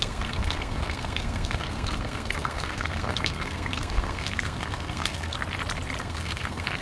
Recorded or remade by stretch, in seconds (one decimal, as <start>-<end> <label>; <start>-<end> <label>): 0.0-5.4 remade; 5.4-6.0 recorded; 6.0-6.8 remade